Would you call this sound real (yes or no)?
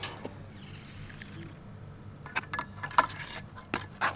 yes